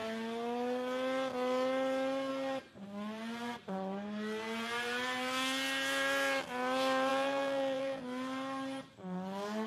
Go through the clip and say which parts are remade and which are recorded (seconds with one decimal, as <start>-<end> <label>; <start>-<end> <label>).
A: 0.0-7.1 recorded; 7.1-8.0 remade; 8.0-9.7 recorded